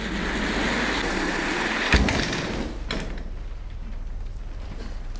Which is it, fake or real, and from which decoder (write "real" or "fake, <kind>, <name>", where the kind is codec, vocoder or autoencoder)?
real